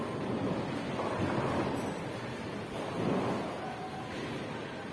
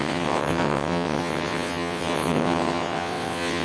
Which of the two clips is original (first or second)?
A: first